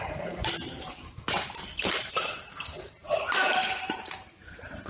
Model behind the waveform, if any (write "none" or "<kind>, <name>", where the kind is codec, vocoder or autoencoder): vocoder, BigVGAN v2